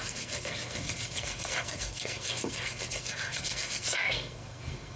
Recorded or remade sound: remade